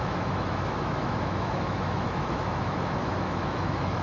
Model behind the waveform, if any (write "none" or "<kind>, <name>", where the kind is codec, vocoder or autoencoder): autoencoder, DAC-VAE